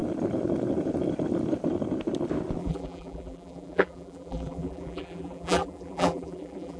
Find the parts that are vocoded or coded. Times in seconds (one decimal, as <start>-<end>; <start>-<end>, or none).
2.6-6.8